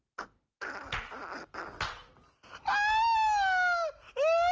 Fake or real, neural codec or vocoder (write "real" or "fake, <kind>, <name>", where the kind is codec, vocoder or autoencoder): real